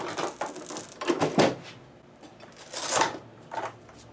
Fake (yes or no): no